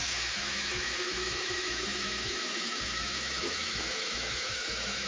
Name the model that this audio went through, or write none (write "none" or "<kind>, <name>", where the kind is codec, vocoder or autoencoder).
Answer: autoencoder, DAC-VAE